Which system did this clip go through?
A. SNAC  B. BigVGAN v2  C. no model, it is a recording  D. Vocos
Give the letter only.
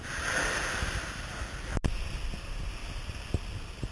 C